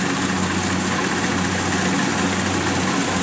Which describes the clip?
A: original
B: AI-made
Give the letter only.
A